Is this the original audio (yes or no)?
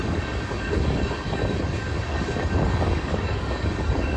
no